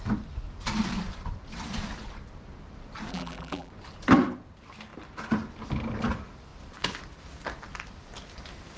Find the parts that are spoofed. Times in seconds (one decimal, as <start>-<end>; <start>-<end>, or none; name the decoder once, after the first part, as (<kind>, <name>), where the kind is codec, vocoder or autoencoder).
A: 3.1-3.7 (vocoder, BigVGAN v2)